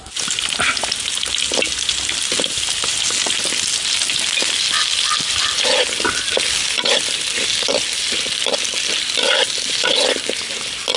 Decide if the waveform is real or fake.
real